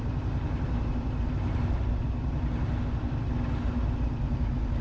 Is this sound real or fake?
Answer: real